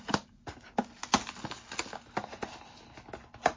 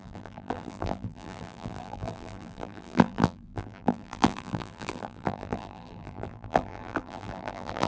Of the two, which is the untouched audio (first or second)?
first